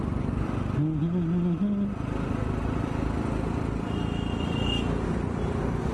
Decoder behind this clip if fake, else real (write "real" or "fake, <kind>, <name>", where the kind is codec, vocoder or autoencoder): real